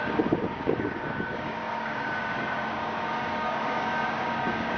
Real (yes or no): no